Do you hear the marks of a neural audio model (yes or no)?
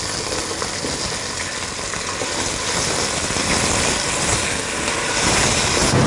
no